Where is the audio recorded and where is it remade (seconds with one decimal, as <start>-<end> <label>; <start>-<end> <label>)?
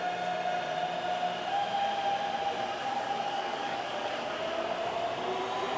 0.0-2.8 recorded; 2.8-4.3 remade; 4.3-5.8 recorded